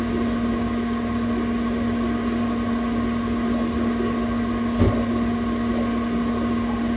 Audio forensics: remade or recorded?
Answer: recorded